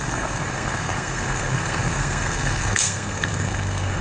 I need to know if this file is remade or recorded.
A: remade